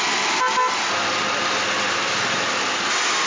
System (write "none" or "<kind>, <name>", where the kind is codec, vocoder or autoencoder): none